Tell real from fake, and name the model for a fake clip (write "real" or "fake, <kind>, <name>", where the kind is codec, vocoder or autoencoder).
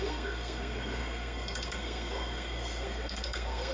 fake, codec, SNAC